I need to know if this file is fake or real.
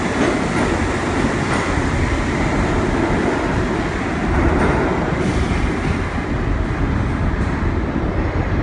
real